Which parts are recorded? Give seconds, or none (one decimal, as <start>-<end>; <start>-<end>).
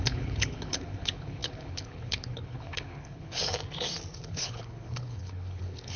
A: 3.4-4.1